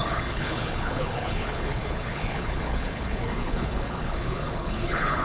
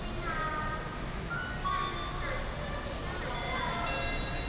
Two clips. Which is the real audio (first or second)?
second